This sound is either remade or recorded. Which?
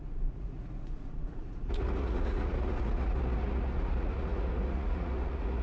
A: remade